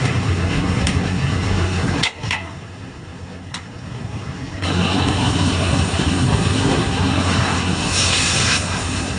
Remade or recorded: remade